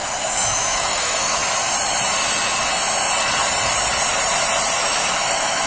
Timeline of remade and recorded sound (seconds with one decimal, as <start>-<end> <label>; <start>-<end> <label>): 0.0-1.4 remade; 1.4-4.8 recorded; 4.8-5.7 remade